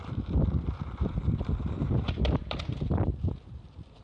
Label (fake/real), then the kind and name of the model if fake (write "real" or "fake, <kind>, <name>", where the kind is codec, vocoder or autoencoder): fake, vocoder, BigVGAN v2